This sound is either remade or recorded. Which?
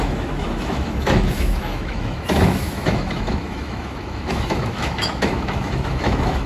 remade